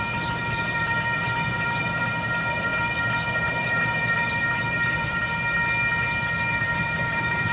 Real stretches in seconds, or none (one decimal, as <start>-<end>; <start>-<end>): 2.7-3.5; 5.2-6.5